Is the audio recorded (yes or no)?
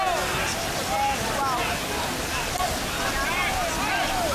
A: yes